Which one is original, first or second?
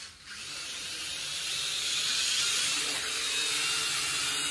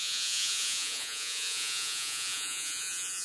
first